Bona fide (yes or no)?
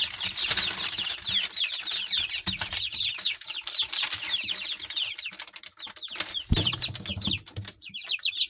yes